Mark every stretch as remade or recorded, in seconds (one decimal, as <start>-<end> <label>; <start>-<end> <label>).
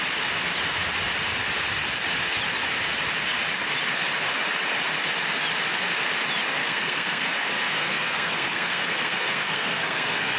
0.0-6.6 recorded; 6.6-10.4 remade